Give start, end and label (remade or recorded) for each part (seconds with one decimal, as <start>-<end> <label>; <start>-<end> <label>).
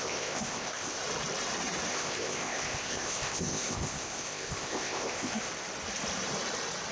0.0-1.0 remade; 1.0-1.9 recorded; 1.9-5.5 remade; 5.5-6.9 recorded